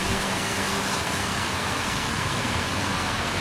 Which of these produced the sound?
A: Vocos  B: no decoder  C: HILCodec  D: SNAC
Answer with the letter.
D